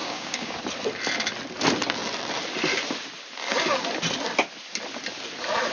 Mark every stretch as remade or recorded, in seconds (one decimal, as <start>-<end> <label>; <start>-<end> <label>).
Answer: 0.0-0.6 remade; 0.6-5.7 recorded